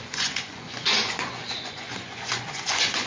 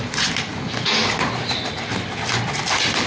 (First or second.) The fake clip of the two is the first